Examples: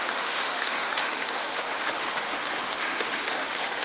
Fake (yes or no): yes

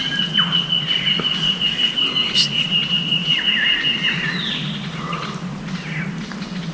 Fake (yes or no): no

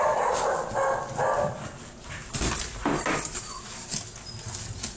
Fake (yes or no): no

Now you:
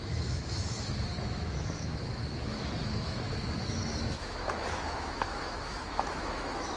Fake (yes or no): yes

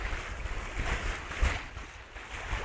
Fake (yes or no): no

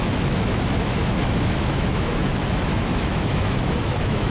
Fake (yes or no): yes